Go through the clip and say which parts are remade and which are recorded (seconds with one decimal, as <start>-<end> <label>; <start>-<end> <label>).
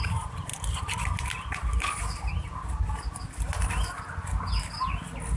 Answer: 0.0-5.4 recorded